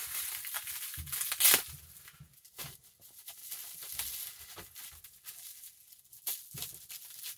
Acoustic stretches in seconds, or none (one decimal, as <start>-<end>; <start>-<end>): 0.6-7.4